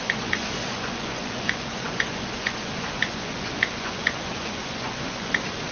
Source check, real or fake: fake